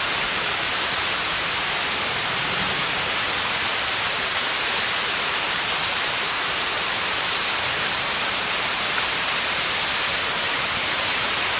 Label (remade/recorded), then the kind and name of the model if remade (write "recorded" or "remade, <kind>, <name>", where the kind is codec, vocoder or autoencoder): remade, vocoder, BigVGAN v2